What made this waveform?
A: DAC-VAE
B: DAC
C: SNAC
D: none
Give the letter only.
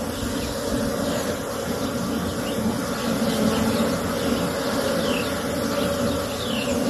D